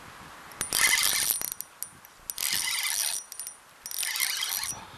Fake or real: real